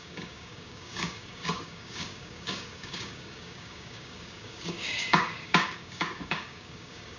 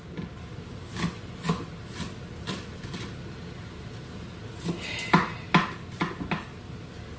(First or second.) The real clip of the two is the second